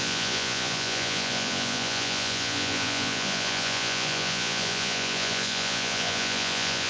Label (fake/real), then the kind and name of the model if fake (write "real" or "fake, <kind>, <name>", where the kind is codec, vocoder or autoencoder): fake, vocoder, Vocos